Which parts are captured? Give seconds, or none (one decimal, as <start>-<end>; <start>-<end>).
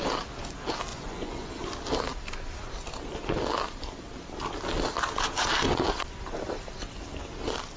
0.0-0.9; 1.5-7.8